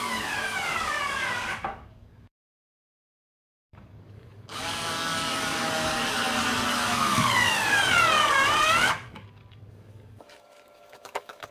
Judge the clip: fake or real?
fake